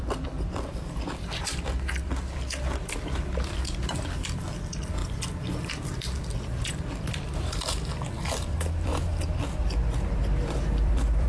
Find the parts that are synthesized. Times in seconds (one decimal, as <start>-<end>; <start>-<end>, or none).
0.0-5.0; 5.6-11.3